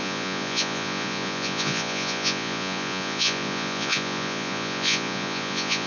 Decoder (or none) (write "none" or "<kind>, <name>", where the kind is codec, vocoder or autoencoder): vocoder, Vocos